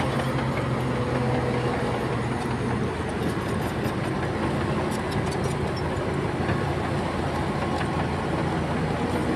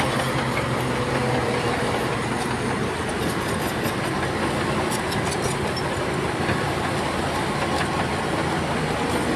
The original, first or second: first